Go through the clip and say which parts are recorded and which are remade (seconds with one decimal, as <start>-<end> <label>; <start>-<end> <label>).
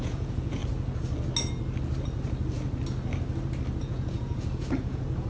0.0-0.6 remade; 0.6-3.8 recorded; 3.8-5.3 remade